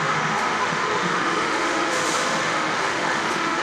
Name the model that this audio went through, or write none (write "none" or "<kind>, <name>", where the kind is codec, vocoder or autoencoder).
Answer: autoencoder, DAC-VAE